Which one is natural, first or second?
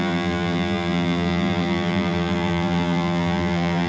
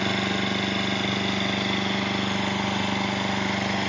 second